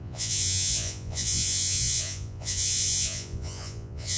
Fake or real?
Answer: fake